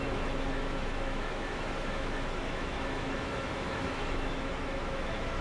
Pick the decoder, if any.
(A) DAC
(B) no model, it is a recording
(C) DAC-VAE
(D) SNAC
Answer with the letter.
C